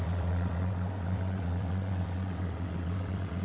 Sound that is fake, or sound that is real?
fake